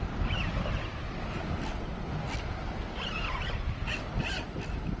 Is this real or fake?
real